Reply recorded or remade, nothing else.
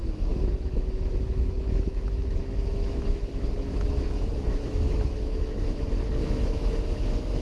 remade